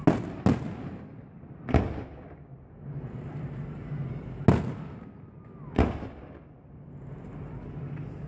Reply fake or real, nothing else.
real